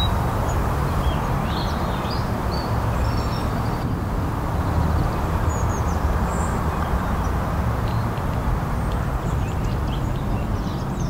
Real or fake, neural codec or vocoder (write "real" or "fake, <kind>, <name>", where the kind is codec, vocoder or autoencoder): real